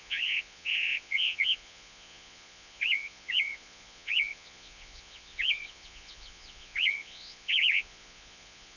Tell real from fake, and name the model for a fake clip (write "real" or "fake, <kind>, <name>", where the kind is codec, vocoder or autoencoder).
fake, vocoder, Vocos